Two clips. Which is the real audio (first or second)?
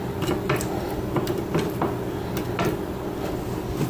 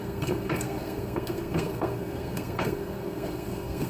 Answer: first